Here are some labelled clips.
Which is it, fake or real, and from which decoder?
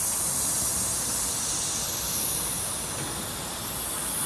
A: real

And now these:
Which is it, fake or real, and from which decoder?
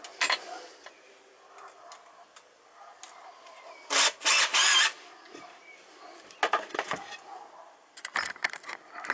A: real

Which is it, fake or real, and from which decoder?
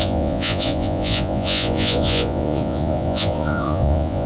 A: fake, vocoder, Vocos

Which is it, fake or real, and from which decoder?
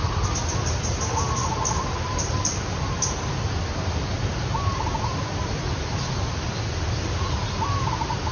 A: real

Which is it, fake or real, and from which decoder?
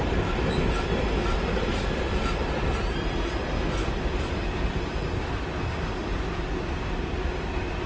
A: real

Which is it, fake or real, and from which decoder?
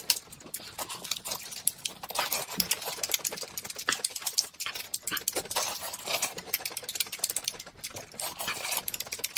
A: real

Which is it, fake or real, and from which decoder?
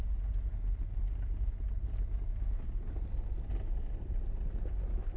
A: real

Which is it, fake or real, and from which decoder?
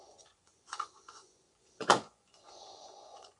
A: fake, vocoder, Vocos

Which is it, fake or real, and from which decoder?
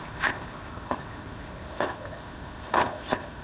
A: fake, codec, ZipCodec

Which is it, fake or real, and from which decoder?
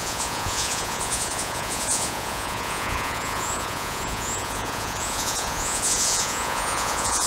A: fake, vocoder, Vocos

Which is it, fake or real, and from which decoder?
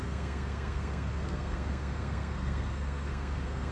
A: fake, codec, SNAC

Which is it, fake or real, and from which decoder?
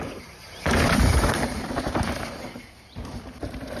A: fake, vocoder, BigVGAN v2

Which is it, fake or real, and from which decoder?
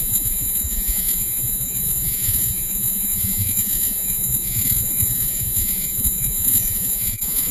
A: fake, vocoder, Vocos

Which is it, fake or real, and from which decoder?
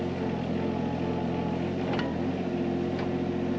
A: real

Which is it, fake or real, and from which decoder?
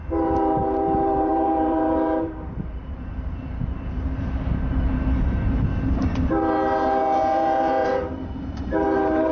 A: fake, vocoder, BigVGAN v2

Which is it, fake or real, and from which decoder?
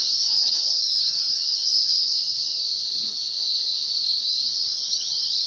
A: fake, codec, HILCodec